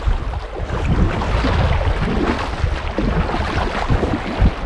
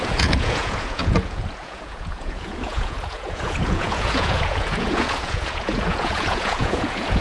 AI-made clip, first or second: second